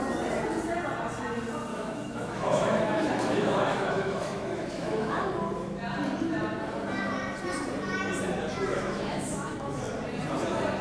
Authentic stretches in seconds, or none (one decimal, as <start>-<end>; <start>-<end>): 0.0-1.7; 5.3-8.7; 9.8-10.8